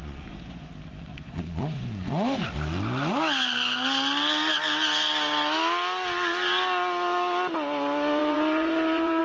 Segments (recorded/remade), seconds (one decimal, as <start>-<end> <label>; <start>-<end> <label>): 0.0-0.7 remade; 0.7-1.1 recorded; 1.1-2.4 remade; 2.4-8.2 recorded; 8.2-9.2 remade